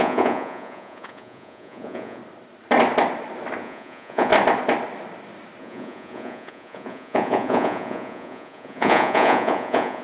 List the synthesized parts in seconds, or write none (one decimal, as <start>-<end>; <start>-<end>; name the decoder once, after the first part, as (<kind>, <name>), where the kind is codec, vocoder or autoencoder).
0.0-2.2 (vocoder, Vocos); 3.6-4.3; 5.6-10.0